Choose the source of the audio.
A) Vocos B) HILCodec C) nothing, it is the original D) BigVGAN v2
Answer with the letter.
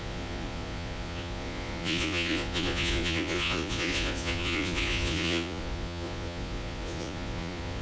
A